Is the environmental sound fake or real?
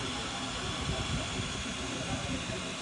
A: real